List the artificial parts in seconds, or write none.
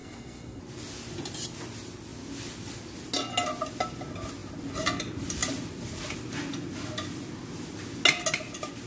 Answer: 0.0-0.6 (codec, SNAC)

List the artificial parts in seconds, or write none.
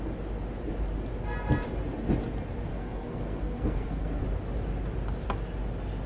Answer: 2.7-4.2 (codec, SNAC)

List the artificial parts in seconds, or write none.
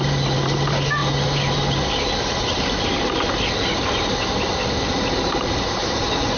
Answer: none